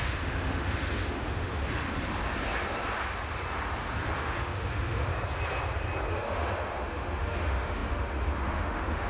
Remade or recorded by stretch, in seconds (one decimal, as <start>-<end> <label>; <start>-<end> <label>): 0.0-1.6 remade; 1.6-4.2 recorded; 4.2-5.1 remade; 5.1-6.1 recorded; 6.1-9.1 remade